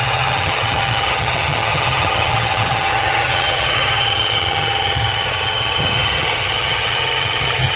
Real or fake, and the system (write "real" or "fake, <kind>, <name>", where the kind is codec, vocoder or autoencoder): fake, vocoder, HiFi-GAN